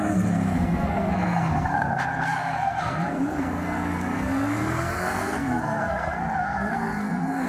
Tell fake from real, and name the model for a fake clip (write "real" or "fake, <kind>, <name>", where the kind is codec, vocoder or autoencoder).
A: fake, codec, SNAC